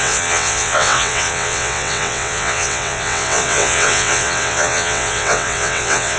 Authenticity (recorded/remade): remade